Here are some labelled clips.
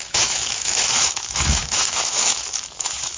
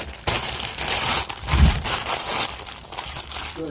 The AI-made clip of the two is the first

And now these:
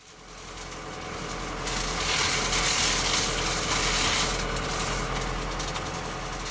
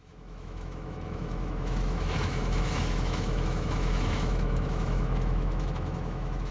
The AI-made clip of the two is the second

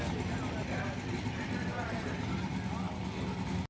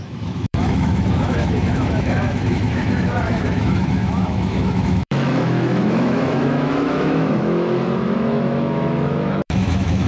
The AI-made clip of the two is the second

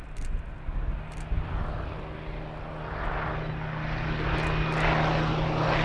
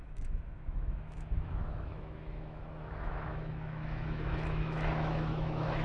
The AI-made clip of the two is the second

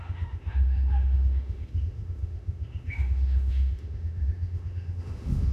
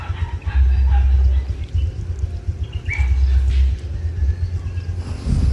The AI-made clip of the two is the first